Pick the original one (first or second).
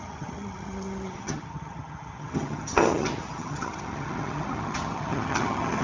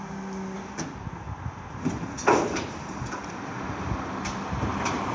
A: second